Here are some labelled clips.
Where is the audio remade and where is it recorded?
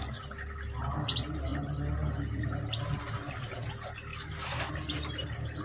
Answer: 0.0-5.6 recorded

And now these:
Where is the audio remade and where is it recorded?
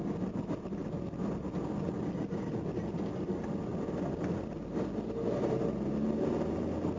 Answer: 0.0-7.0 recorded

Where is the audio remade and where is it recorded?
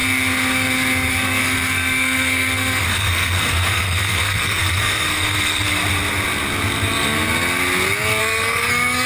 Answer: 0.0-1.1 recorded; 1.1-5.8 remade; 5.8-8.2 recorded; 8.2-9.1 remade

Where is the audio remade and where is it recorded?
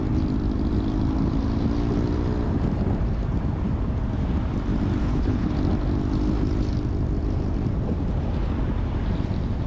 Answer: 0.0-5.0 recorded; 5.0-5.5 remade; 5.5-9.7 recorded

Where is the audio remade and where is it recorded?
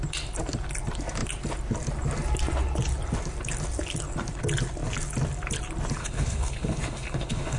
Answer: 0.0-6.0 recorded; 6.0-7.6 remade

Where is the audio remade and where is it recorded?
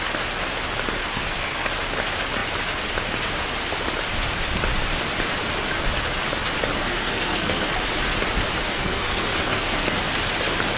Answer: 0.0-1.0 recorded; 1.0-1.7 remade; 1.7-6.8 recorded; 6.8-7.7 remade; 7.7-8.7 recorded; 8.7-10.0 remade; 10.0-10.8 recorded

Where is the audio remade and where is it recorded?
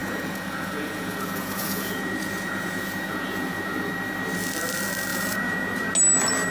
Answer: 0.0-3.9 remade; 3.9-5.1 recorded; 5.1-5.8 remade; 5.8-6.5 recorded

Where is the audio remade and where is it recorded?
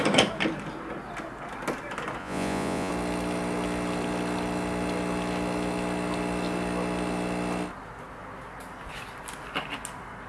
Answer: 0.0-2.2 recorded; 2.2-2.9 remade; 2.9-10.3 recorded